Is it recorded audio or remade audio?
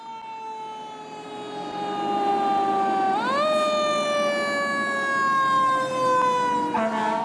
recorded